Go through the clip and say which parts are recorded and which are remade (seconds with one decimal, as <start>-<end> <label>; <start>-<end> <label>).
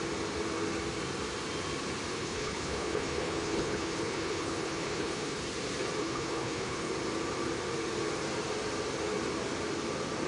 0.0-2.1 recorded; 2.1-5.4 remade; 5.4-6.0 recorded; 6.0-6.9 remade; 6.9-10.3 recorded